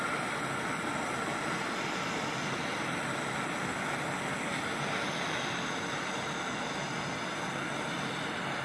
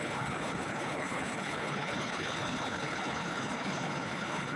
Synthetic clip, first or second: second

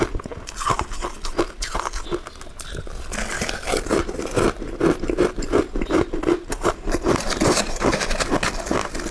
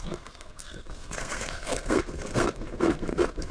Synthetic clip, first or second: second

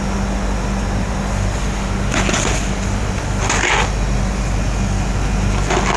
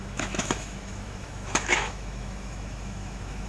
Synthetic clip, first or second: second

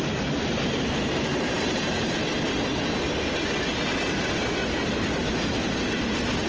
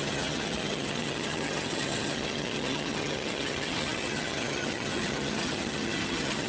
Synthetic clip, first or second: second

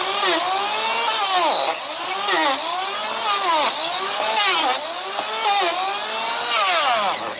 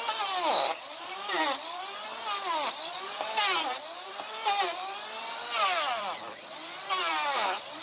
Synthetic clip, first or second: second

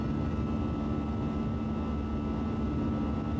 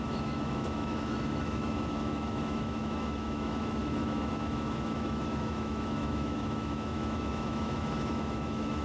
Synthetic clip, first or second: second